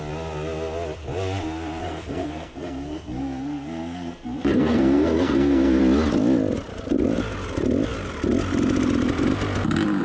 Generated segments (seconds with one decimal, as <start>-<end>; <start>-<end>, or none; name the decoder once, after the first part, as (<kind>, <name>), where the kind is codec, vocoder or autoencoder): 1.8-5.8 (codec, SNAC)